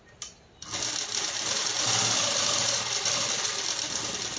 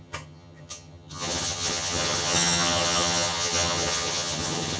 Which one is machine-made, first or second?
second